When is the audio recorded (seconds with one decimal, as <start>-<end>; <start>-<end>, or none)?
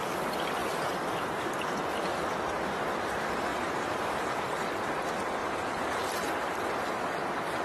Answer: 0.0-3.5; 4.7-5.4; 6.0-7.6